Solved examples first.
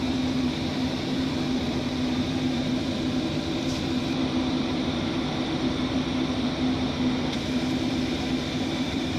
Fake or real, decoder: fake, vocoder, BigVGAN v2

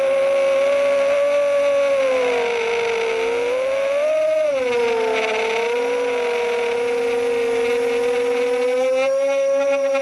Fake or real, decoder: real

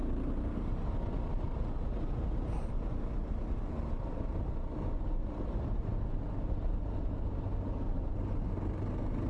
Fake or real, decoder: real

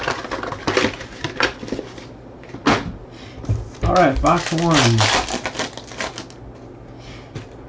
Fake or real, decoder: real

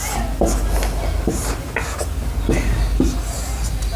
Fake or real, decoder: real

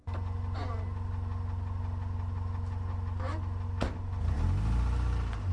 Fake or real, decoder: real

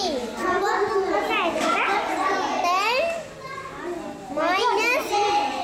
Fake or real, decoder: real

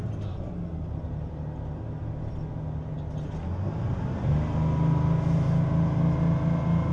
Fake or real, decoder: real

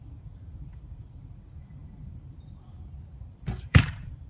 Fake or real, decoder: fake, vocoder, BigVGAN v2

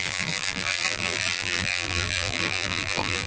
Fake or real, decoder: fake, vocoder, BigVGAN v2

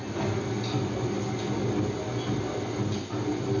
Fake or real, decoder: real